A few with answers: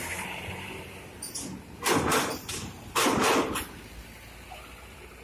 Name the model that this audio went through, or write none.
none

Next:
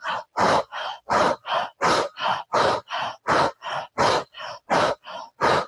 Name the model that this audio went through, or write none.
vocoder, BigVGAN v2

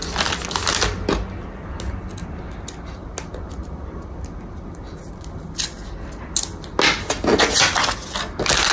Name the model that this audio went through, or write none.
none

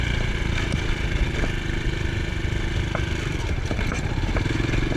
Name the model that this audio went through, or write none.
none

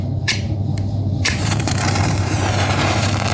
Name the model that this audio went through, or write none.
vocoder, BigVGAN v2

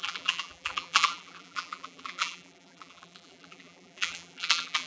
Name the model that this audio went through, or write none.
vocoder, BigVGAN v2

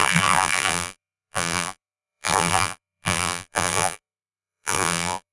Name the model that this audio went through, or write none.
vocoder, BigVGAN v2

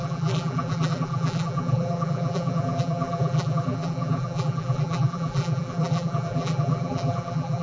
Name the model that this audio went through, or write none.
vocoder, BigVGAN v2